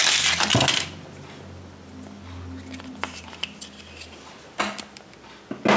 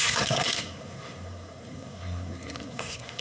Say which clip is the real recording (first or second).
first